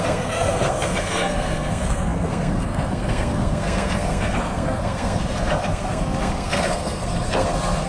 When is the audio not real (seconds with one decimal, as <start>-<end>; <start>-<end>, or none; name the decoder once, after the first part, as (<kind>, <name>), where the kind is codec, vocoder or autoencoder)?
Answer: 0.0-7.9 (codec, SNAC)